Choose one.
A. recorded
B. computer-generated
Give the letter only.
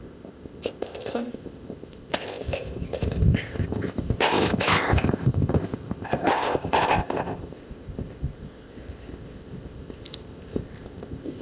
B